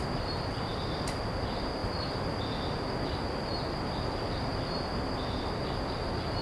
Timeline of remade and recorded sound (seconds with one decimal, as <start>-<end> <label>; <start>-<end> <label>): 0.0-6.4 recorded